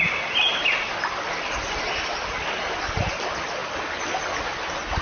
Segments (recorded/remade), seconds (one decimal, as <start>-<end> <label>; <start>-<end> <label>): 0.0-5.0 recorded